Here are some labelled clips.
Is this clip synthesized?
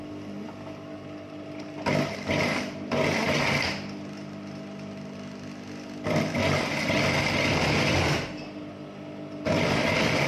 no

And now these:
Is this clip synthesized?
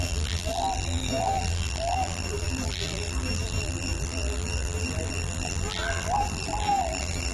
yes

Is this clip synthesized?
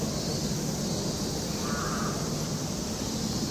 yes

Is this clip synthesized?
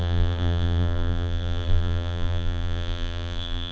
yes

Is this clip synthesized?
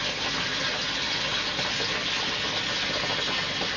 no